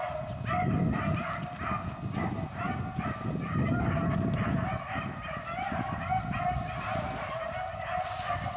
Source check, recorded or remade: recorded